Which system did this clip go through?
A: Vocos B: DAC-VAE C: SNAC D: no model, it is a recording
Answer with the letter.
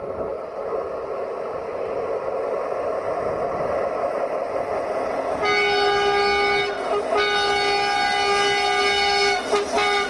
D